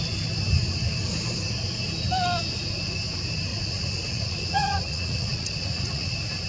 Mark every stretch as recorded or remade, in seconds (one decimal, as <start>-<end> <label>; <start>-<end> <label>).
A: 0.0-3.5 recorded; 3.5-6.1 remade; 6.1-6.5 recorded